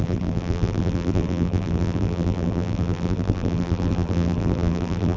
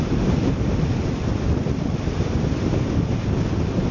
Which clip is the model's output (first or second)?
first